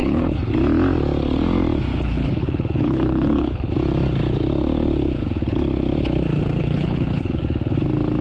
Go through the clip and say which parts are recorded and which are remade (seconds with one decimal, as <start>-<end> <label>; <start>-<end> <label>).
0.0-0.5 remade; 0.5-1.9 recorded; 1.9-3.7 remade; 3.7-6.6 recorded; 6.6-7.4 remade; 7.4-8.2 recorded